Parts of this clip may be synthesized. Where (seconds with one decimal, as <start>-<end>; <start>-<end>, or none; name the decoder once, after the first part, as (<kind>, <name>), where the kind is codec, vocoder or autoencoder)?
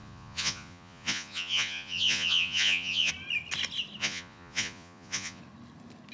0.0-3.1 (vocoder, Vocos); 4.0-5.4